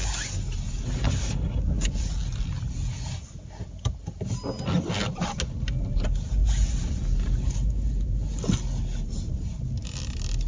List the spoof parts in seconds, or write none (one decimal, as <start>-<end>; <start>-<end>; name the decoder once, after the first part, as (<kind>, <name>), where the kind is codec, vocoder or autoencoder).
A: none